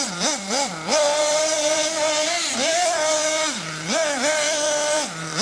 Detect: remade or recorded remade